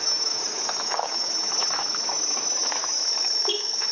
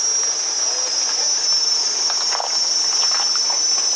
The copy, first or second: first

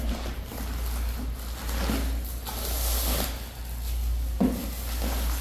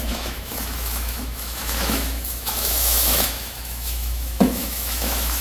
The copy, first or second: second